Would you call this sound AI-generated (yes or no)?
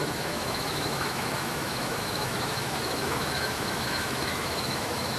yes